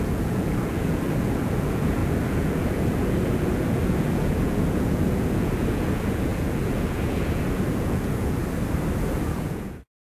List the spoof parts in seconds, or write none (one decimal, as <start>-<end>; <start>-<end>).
0.0-8.4; 9.0-10.1